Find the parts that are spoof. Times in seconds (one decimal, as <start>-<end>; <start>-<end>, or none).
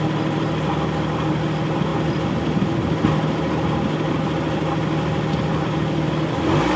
none